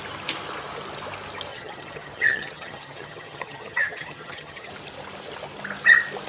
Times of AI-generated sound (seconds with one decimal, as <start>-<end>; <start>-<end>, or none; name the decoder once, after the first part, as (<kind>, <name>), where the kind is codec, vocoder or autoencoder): 1.5-4.7 (vocoder, HiFi-GAN)